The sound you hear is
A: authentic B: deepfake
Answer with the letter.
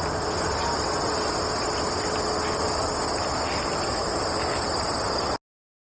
A